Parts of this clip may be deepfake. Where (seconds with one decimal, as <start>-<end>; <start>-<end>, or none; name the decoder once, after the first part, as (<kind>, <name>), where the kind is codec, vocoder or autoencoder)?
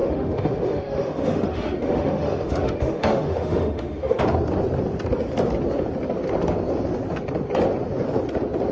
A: 0.0-4.2 (autoencoder, DAC-VAE)